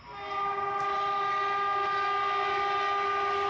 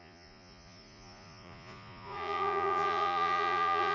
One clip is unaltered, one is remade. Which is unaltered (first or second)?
first